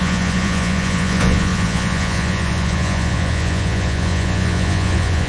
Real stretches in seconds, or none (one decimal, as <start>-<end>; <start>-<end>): none